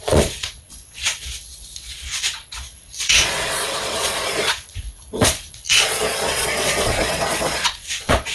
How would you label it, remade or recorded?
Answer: remade